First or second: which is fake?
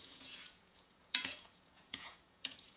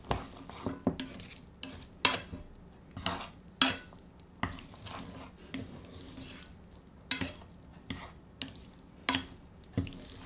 first